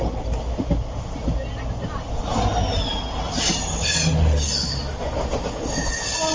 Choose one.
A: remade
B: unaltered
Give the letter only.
B